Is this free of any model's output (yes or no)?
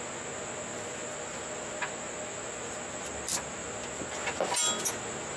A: yes